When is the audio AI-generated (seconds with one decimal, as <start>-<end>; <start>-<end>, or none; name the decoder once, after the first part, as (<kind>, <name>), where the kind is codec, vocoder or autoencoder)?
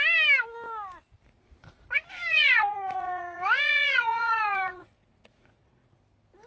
2.3-5.9 (vocoder, Vocos)